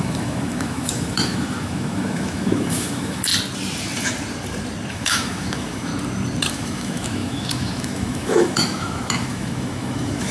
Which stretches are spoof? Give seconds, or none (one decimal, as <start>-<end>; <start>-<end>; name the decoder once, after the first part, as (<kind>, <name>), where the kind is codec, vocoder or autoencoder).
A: 0.0-3.3 (autoencoder, DAC-VAE); 4.9-5.9; 6.5-10.3